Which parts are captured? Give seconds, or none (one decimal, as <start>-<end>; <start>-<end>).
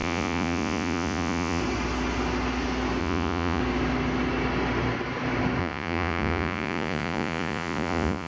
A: 1.6-3.0; 3.6-5.6